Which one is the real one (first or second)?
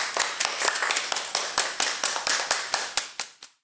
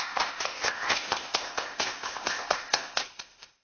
first